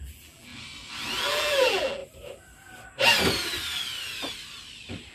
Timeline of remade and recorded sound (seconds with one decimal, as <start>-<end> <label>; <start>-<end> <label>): 0.0-0.5 remade; 0.5-1.2 recorded; 1.2-2.0 remade; 2.0-5.1 recorded